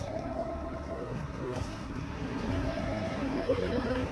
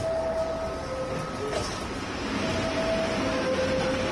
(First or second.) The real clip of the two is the second